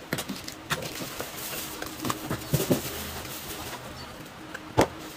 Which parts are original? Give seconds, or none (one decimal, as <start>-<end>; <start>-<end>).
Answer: 0.0-3.6; 4.4-5.2